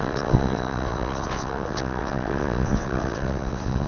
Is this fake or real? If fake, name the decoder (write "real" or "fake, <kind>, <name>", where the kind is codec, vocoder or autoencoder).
fake, vocoder, WaveNeXt